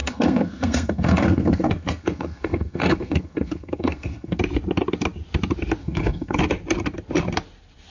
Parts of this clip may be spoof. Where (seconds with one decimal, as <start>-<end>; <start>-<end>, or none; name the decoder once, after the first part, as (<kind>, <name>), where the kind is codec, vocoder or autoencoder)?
0.0-4.4 (codec, SNAC); 5.8-6.4